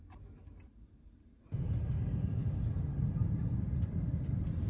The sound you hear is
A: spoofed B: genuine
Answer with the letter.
B